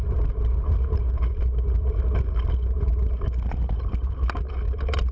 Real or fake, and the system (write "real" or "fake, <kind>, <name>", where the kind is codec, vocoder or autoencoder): real